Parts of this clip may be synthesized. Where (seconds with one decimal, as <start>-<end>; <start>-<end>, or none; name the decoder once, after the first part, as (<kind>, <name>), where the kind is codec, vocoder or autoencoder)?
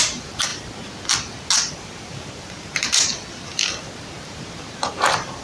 0.0-0.5 (vocoder, BigVGAN v2); 1.7-3.1; 4.1-5.4